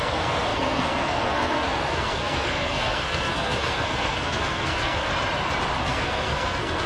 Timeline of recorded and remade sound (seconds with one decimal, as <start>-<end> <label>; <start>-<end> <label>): 0.0-5.1 remade; 5.1-5.8 recorded; 5.8-6.9 remade